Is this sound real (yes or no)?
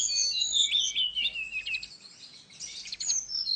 yes